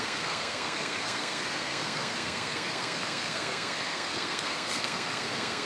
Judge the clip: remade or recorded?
remade